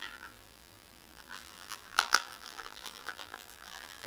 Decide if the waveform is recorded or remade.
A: remade